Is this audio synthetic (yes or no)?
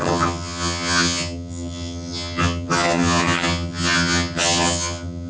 yes